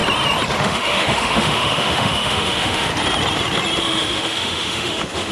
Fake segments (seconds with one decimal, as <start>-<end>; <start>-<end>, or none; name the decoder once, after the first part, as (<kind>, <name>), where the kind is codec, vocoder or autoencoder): 0.6-2.9 (autoencoder, DAC-VAE); 3.8-5.3